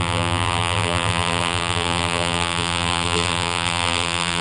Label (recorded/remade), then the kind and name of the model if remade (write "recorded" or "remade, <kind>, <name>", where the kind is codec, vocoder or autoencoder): remade, vocoder, BigVGAN v2